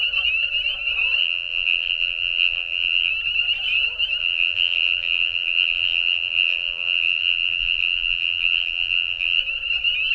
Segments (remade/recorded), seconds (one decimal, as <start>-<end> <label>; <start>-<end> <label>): 0.0-1.2 recorded; 1.2-3.1 remade; 3.1-4.2 recorded; 4.2-9.4 remade; 9.4-10.1 recorded